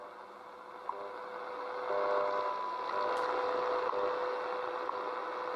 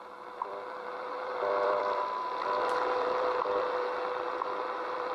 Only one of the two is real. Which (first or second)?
first